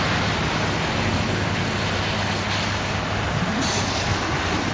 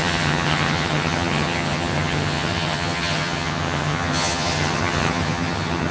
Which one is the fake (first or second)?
second